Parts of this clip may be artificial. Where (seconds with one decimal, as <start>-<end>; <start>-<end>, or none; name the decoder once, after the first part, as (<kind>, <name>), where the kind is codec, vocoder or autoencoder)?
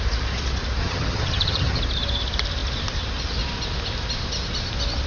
0.8-1.8 (vocoder, HiFi-GAN)